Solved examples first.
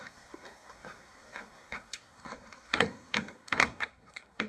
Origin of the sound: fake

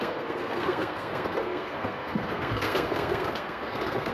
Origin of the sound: fake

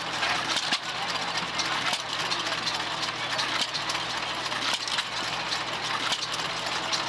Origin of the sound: real